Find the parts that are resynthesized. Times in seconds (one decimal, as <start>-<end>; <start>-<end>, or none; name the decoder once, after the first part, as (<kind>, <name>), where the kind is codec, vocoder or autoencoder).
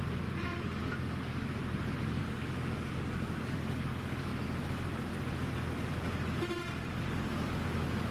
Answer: 0.0-1.6 (codec, DAC); 2.2-4.3; 7.0-8.1